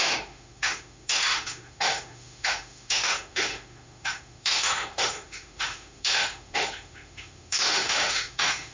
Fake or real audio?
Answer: fake